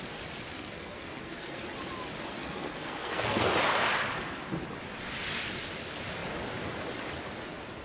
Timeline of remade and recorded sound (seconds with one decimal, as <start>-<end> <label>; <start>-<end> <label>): 0.0-0.5 recorded; 0.5-1.6 remade; 1.6-2.3 recorded; 2.3-3.5 remade; 3.5-7.8 recorded